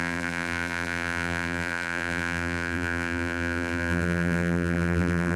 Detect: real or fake fake